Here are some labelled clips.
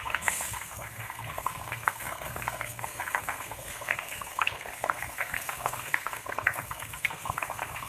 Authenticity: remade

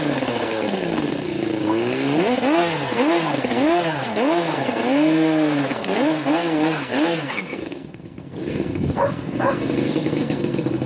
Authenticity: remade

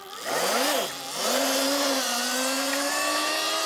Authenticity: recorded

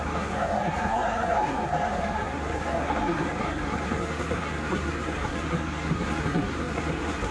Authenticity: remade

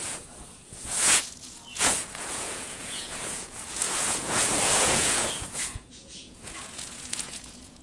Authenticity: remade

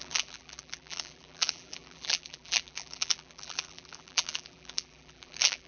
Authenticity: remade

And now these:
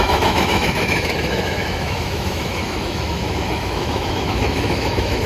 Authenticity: remade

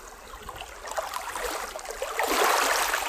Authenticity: recorded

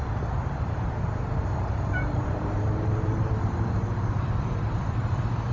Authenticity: remade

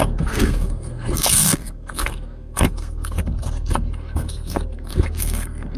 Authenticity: remade